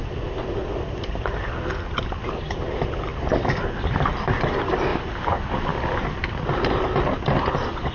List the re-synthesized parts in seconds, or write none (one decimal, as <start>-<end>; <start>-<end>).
none